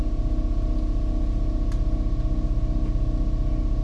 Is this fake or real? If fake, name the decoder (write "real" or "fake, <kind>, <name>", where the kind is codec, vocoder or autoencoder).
real